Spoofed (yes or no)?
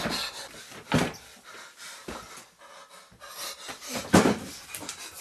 no